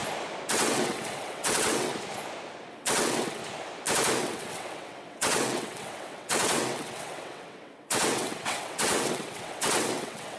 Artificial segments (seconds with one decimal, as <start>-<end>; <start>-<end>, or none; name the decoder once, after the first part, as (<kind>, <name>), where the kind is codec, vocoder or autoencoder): 0.5-1.9 (vocoder, WaveNeXt); 2.7-3.4; 4.2-10.4